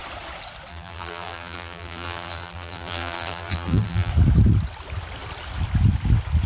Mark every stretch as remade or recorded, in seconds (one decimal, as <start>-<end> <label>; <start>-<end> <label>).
0.0-0.7 recorded; 0.7-4.1 remade; 4.1-6.5 recorded

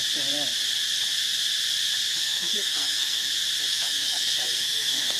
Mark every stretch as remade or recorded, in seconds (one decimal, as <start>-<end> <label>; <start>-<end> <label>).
0.0-2.1 recorded; 2.1-3.3 remade; 3.3-3.7 recorded; 3.7-5.2 remade

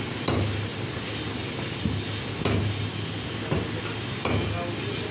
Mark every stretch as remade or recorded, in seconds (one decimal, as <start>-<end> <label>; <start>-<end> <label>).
0.0-5.1 recorded

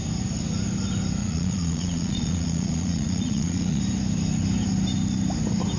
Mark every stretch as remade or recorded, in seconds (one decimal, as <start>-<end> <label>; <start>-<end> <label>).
0.0-1.2 recorded; 1.2-3.8 remade; 3.8-5.8 recorded